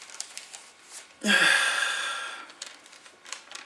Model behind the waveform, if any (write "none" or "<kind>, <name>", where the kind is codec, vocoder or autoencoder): vocoder, BigVGAN v2